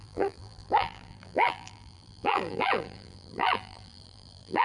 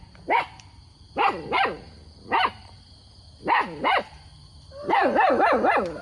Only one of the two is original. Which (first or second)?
second